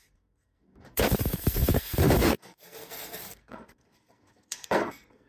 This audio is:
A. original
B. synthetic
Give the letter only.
B